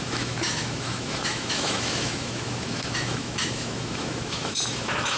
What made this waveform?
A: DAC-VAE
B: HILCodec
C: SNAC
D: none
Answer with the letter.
A